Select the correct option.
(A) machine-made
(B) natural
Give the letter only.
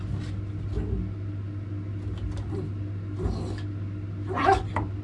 B